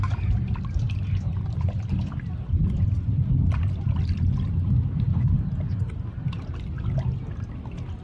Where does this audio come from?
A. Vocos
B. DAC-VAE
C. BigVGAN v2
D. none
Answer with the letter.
D